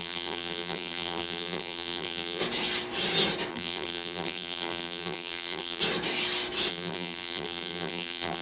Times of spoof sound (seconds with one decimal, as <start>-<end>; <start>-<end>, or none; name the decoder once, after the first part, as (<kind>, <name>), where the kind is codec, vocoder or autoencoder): 0.0-2.4 (vocoder, BigVGAN v2); 3.5-5.8; 6.7-8.4